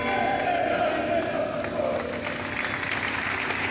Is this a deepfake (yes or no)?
no